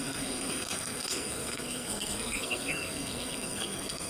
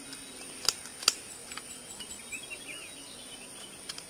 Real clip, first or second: second